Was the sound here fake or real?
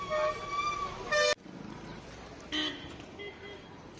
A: real